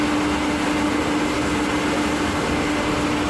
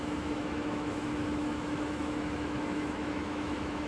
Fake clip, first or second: second